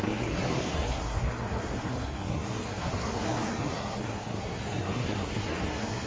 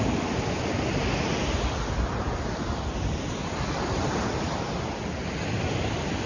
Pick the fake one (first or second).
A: first